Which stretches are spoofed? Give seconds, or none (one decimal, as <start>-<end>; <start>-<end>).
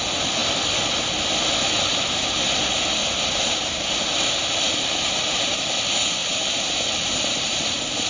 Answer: 1.9-2.6; 3.0-5.7; 6.2-8.1